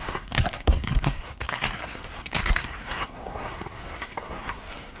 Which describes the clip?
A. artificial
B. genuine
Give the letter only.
A